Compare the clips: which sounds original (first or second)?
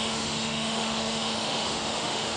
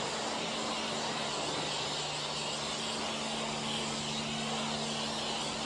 second